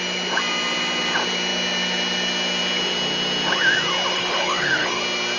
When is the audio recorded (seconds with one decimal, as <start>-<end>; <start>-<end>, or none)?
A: 0.0-4.1; 5.0-5.4